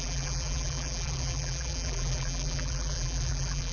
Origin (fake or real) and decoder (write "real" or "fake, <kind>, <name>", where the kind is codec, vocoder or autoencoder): fake, vocoder, BigVGAN v2